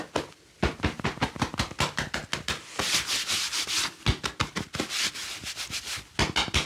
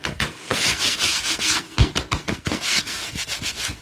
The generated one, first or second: second